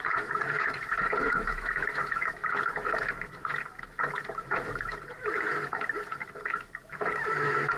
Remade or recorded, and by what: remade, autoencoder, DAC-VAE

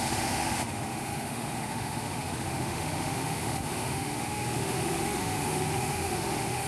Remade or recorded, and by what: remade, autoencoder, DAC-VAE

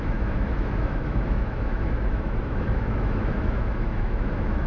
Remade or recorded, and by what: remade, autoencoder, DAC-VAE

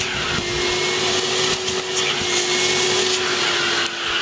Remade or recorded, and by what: recorded